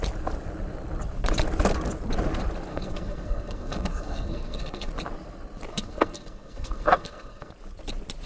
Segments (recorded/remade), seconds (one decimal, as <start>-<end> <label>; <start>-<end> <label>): 0.0-2.7 recorded; 2.7-4.9 remade; 4.9-5.7 recorded; 5.7-7.5 remade; 7.5-8.3 recorded